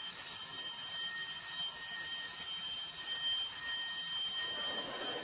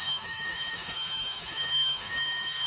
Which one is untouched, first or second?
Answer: first